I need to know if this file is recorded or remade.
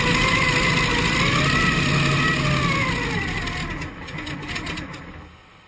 recorded